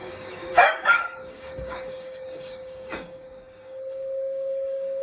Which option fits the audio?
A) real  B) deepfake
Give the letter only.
B